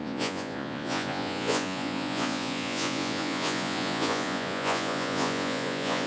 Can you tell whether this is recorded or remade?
remade